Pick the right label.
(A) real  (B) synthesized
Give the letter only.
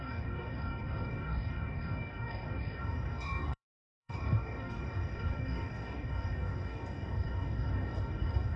B